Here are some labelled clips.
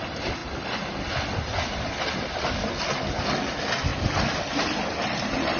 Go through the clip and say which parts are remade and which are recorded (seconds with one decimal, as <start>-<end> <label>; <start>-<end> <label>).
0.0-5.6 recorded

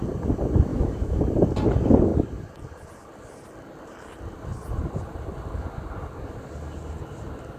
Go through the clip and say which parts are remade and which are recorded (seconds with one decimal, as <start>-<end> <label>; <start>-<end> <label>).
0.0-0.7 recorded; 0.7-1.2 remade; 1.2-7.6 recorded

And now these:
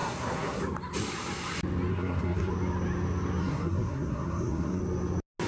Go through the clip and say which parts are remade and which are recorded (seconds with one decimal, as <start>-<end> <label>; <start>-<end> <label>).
0.0-0.6 remade; 0.6-1.9 recorded; 1.9-2.5 remade; 2.5-3.4 recorded; 3.4-4.8 remade; 4.8-5.5 recorded